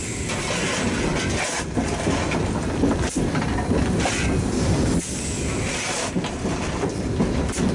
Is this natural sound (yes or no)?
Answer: yes